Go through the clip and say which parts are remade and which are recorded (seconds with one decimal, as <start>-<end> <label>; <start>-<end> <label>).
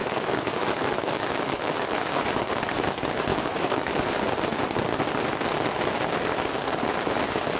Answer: 0.0-2.5 remade; 2.5-3.3 recorded; 3.3-4.0 remade; 4.0-7.6 recorded